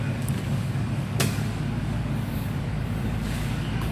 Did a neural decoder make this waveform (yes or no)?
yes